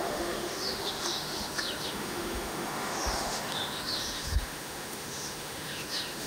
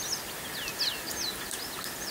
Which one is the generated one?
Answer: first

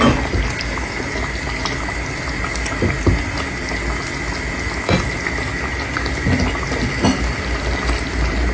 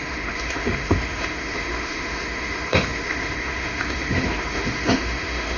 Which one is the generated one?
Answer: second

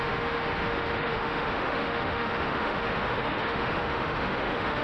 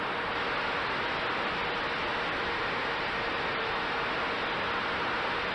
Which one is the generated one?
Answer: first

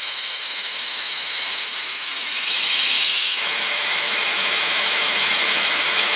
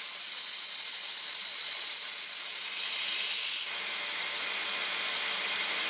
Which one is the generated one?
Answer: first